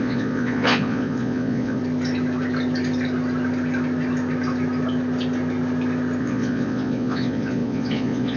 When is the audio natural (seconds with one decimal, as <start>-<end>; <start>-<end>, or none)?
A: 1.8-6.2